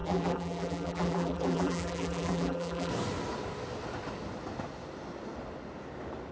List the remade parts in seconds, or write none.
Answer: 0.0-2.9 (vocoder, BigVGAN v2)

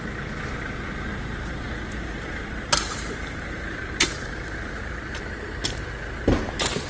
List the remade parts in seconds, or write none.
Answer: 1.1-5.2 (vocoder, BigVGAN v2)

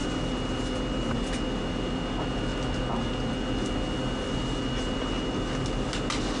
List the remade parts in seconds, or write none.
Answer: none

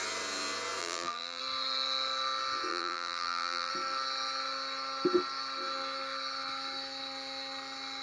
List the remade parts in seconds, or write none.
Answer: 0.8-1.4 (vocoder, BigVGAN v2); 2.7-3.7

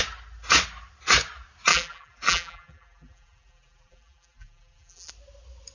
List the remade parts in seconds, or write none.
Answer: 1.7-5.1 (vocoder, BigVGAN v2)